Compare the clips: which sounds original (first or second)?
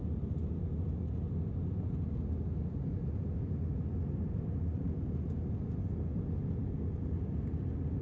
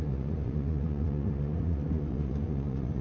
first